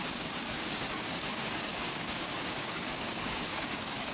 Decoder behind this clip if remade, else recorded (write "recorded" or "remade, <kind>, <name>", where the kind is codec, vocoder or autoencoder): remade, codec, DAC